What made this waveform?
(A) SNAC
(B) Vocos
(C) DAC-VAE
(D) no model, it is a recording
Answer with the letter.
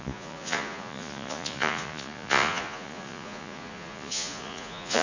B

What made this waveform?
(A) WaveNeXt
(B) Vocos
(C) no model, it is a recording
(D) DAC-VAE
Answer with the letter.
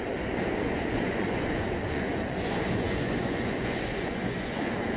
B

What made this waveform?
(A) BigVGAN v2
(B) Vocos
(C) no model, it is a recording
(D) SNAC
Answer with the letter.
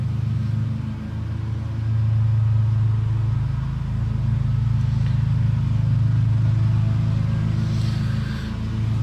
C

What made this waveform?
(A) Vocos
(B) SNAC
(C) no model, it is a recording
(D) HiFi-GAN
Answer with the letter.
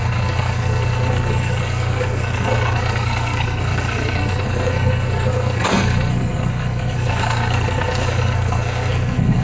B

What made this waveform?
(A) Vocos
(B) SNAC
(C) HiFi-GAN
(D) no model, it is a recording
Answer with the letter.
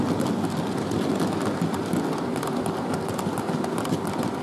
D